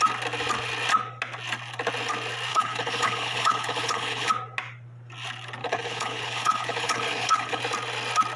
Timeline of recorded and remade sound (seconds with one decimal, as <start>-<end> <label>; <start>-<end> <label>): 0.0-2.5 recorded; 2.5-4.3 remade; 4.3-5.6 recorded; 5.6-7.6 remade; 7.6-8.4 recorded